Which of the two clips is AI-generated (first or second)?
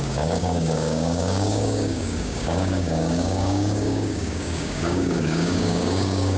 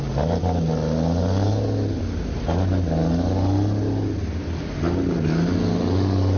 first